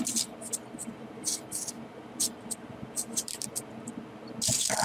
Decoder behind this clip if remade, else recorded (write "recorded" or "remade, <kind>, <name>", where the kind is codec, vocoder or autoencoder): recorded